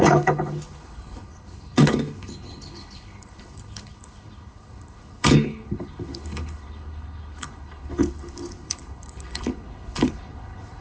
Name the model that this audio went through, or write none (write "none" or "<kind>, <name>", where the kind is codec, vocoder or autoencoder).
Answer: codec, HILCodec